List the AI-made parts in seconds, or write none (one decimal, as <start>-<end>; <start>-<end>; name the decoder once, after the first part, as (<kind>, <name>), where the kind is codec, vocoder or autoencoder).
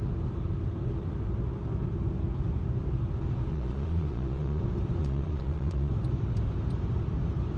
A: 3.5-4.6 (vocoder, Vocos); 5.0-5.9